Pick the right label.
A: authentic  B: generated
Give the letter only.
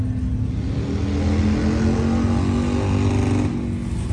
A